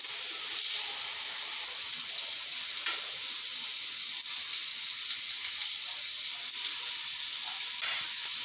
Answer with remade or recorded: recorded